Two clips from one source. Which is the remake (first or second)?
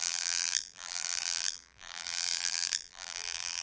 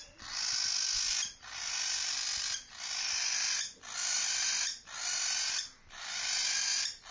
first